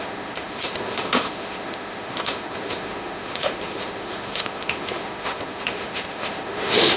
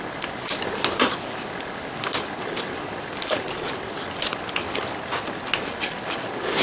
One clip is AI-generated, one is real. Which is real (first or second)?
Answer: second